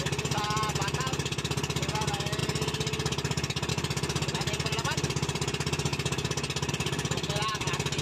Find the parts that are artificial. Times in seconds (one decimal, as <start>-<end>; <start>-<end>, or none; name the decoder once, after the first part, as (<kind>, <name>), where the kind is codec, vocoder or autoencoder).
0.0-2.4 (vocoder, BigVGAN v2); 3.7-5.9; 6.7-8.0

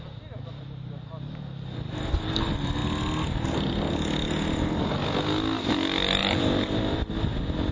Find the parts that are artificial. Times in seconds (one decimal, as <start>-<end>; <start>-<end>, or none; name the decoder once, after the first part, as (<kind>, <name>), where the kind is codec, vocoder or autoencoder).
6.2-7.0 (vocoder, BigVGAN v2)

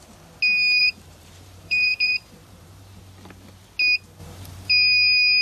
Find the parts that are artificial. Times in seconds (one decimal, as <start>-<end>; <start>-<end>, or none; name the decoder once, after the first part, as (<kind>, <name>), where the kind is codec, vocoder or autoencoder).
0.8-3.0 (vocoder, BigVGAN v2); 4.2-4.7

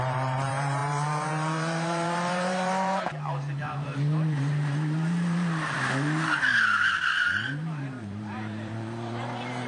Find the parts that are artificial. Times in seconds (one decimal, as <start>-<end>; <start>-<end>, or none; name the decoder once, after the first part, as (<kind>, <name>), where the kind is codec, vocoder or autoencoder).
0.0-6.5 (vocoder, BigVGAN v2); 7.2-9.7

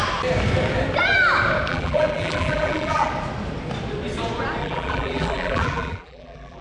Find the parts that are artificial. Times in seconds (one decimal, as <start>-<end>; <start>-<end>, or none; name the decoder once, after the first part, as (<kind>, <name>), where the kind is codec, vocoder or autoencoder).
1.7-3.1 (vocoder, BigVGAN v2); 4.6-6.6

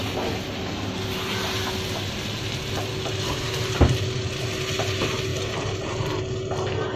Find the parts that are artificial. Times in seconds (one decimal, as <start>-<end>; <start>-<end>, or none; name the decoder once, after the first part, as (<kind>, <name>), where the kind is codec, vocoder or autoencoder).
5.3-6.2 (vocoder, BigVGAN v2)

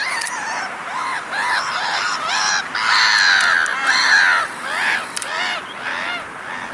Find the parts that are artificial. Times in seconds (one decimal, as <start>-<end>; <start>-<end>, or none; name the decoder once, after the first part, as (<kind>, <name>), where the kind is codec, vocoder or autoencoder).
0.0-2.7 (vocoder, BigVGAN v2); 3.7-4.6